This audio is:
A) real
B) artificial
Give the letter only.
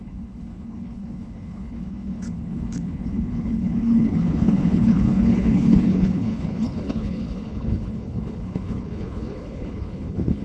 B